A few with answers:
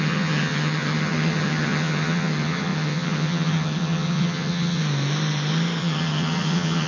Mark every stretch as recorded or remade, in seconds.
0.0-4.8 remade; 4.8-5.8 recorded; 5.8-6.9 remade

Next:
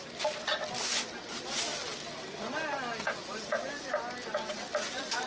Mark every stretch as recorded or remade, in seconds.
0.0-5.3 recorded

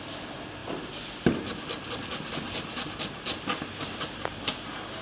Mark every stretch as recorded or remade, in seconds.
0.0-5.0 recorded

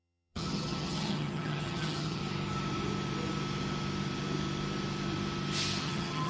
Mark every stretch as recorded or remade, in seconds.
0.0-2.2 remade; 2.2-5.8 recorded; 5.8-6.3 remade